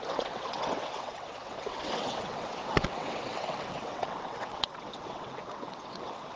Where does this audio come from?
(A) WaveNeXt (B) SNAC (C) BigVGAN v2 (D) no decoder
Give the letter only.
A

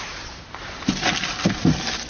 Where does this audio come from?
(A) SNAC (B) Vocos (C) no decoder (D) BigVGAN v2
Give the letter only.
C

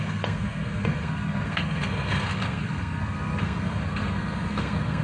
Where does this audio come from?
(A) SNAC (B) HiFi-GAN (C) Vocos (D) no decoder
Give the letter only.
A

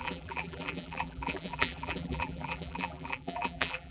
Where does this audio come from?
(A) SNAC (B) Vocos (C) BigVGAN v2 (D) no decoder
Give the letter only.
C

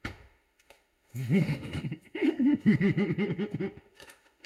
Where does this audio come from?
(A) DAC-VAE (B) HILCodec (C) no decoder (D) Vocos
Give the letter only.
A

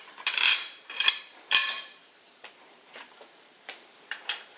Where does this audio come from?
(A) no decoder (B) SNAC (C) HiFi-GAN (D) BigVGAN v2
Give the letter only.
D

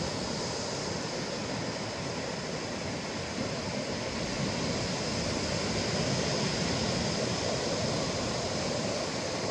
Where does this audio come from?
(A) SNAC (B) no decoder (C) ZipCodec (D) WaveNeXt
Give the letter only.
B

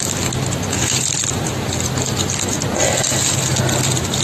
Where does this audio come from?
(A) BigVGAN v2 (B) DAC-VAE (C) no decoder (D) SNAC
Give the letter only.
C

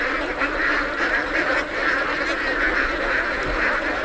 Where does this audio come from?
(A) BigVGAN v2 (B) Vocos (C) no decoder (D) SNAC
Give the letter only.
C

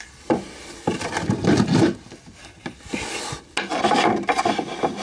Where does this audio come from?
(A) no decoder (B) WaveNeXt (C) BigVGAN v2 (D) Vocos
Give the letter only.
A